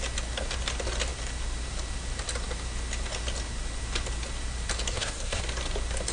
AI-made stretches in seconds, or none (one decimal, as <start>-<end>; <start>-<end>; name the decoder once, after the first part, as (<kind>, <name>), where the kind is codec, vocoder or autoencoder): 4.9-5.4 (codec, SNAC)